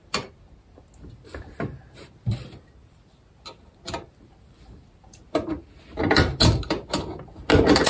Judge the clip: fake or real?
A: real